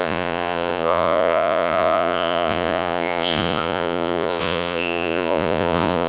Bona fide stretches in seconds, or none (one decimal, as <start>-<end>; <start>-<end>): none